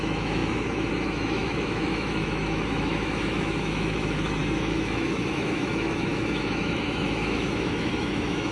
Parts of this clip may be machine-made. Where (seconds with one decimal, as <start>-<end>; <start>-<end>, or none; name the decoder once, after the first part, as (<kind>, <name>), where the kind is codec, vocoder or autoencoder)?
0.0-8.5 (autoencoder, DAC-VAE)